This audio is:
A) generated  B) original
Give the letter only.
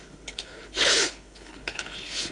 A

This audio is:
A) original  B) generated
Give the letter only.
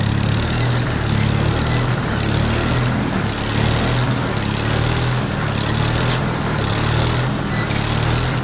A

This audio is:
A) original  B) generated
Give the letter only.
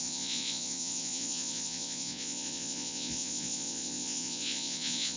B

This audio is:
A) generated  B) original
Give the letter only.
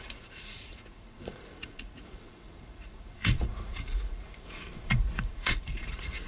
A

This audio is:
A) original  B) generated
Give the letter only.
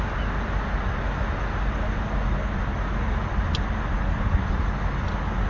A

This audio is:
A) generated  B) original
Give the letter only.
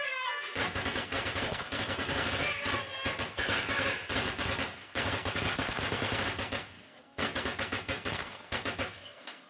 A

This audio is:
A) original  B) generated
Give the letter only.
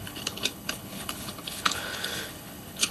B